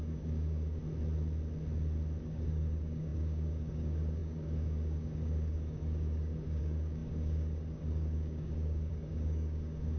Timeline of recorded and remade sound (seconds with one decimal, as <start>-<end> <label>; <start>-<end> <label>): 0.0-0.8 remade; 0.8-2.2 recorded; 2.2-10.0 remade